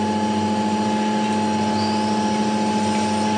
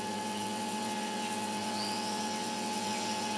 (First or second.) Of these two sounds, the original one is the first